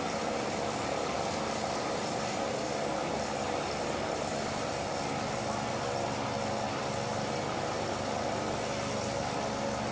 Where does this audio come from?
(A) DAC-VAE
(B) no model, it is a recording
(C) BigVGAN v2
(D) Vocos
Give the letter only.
B